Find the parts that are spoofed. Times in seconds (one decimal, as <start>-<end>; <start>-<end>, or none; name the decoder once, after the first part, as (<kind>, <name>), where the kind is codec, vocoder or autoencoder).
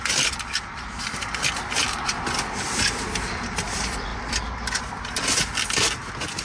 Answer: none